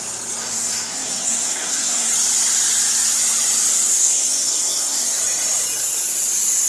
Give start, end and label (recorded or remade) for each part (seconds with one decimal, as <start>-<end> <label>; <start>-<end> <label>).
0.0-0.4 recorded; 0.4-2.1 remade; 2.1-3.9 recorded; 3.9-5.2 remade; 5.2-6.7 recorded